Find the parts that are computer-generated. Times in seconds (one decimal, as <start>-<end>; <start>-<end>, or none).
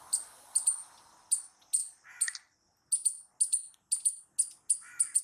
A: none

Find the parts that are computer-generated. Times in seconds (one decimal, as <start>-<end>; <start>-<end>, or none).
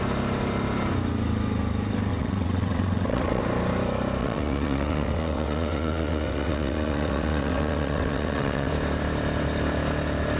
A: 2.1-3.4; 4.2-8.7